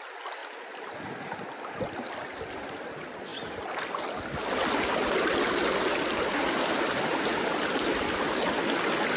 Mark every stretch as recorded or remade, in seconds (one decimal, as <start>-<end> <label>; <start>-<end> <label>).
0.0-9.2 recorded